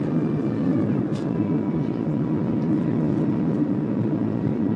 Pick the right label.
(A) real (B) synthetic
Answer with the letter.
B